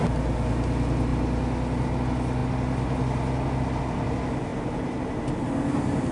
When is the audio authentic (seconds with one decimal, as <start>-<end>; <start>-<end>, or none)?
0.0-4.5; 5.2-6.1